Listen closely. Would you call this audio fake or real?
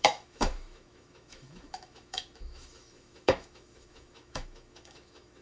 fake